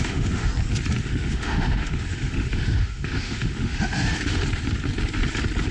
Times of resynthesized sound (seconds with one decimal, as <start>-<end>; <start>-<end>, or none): 0.0-0.5; 1.0-4.4